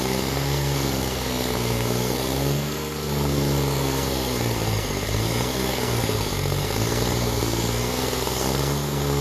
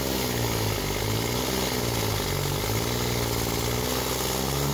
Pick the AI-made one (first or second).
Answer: first